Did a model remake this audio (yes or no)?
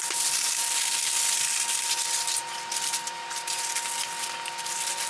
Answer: no